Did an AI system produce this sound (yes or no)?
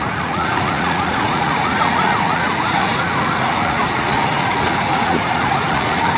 yes